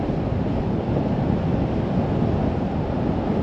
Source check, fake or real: real